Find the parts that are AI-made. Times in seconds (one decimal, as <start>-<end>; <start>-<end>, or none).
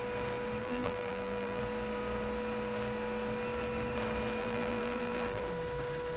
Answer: 0.6-1.6; 4.4-5.4